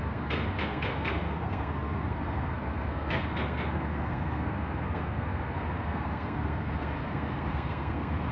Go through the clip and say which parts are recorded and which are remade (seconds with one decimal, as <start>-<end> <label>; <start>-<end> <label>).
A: 0.0-8.3 remade